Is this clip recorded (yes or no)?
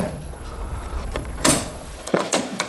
no